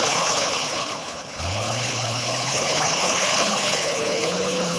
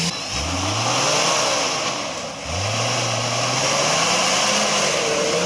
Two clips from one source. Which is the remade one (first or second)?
first